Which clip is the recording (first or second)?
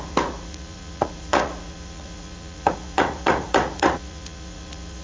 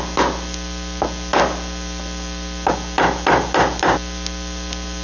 second